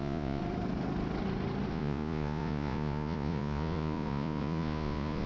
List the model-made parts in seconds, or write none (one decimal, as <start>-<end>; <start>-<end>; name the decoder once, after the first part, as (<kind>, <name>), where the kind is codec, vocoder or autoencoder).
0.0-0.4 (vocoder, Vocos); 1.7-5.3

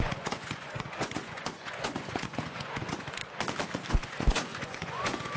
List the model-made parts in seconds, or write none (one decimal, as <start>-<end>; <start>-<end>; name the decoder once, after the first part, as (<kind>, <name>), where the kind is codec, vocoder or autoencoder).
0.0-3.2 (vocoder, Vocos); 3.9-5.4

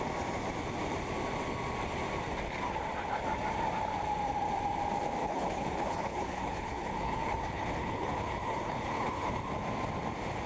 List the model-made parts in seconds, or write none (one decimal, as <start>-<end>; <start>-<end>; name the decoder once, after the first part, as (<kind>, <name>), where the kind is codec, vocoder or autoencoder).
5.2-9.5 (codec, HILCodec)

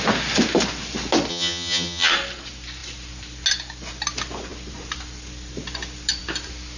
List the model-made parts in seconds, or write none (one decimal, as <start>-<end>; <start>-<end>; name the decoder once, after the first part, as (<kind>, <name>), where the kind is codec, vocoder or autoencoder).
1.3-2.1 (vocoder, HiFi-GAN)

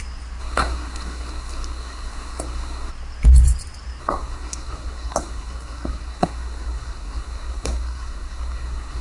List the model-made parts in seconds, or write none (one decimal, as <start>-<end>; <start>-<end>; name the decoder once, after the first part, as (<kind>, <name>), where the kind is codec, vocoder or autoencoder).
0.4-2.9 (codec, SNAC); 4.0-9.0